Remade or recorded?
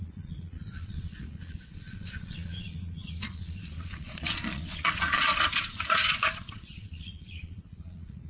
remade